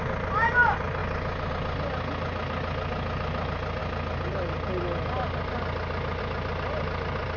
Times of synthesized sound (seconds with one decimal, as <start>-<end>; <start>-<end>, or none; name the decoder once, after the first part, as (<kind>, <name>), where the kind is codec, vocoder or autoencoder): none